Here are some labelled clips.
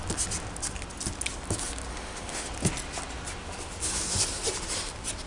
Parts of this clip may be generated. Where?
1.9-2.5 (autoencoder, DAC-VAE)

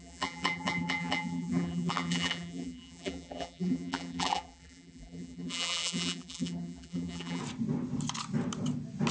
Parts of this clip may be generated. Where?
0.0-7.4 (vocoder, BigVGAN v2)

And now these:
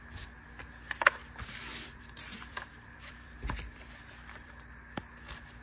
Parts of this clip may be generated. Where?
1.7-5.1 (vocoder, BigVGAN v2)